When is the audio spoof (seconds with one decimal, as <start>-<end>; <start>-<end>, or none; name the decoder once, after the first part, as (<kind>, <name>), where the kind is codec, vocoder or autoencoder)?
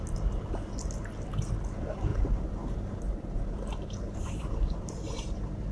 2.1-5.7 (vocoder, BigVGAN v2)